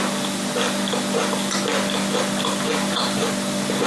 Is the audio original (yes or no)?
yes